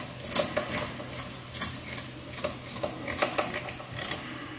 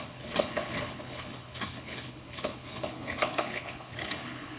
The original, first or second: first